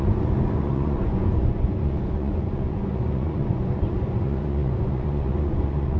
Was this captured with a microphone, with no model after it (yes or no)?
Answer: no